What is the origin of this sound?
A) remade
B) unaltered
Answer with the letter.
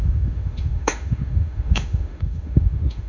A